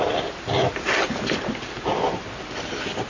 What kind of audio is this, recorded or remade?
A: recorded